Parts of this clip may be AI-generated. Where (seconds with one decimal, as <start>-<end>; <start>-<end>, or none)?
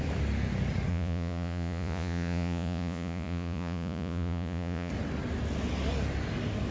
0.9-4.9